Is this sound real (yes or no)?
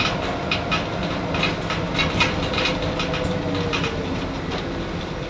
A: yes